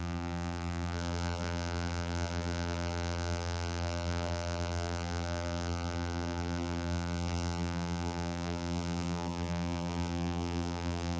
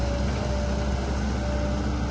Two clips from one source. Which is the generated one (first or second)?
first